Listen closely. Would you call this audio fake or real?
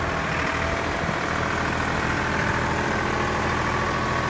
real